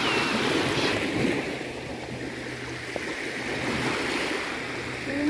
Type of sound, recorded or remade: recorded